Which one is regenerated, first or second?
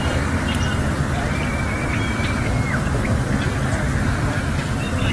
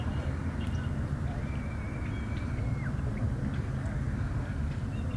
first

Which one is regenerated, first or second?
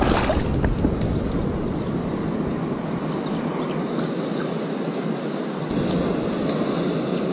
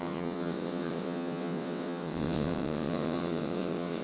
second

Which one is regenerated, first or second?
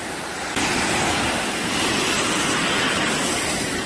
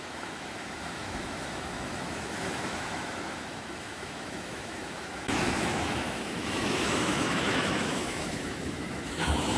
second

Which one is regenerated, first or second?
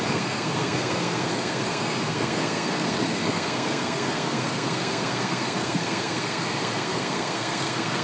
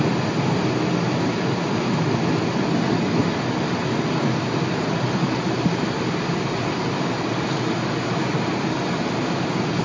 first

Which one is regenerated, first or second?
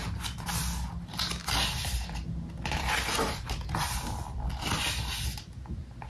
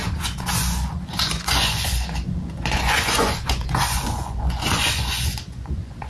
second